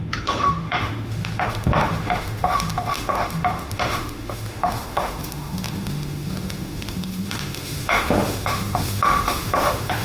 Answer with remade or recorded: remade